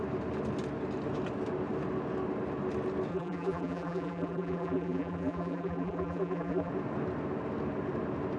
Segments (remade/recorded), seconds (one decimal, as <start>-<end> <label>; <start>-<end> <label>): 0.0-3.1 recorded; 3.1-6.7 remade; 6.7-8.4 recorded